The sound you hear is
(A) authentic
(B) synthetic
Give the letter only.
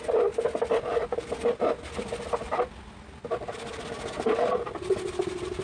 A